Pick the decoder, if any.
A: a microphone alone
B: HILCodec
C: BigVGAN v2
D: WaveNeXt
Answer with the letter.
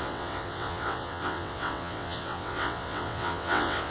D